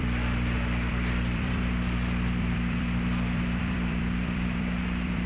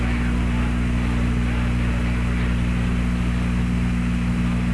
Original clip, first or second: second